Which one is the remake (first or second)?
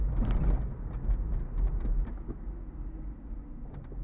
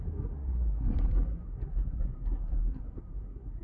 second